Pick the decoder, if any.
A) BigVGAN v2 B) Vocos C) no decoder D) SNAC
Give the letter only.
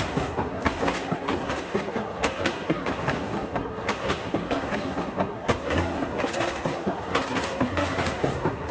D